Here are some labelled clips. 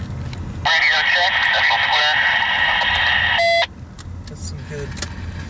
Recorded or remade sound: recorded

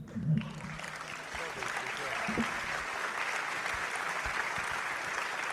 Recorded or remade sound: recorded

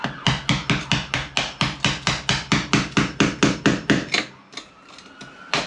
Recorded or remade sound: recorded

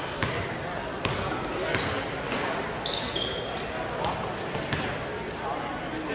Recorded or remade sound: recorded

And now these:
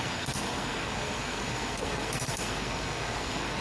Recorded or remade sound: remade